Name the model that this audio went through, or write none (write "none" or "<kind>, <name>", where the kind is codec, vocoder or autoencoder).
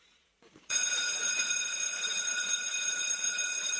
vocoder, Vocos